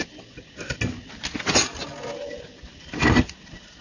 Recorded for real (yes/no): yes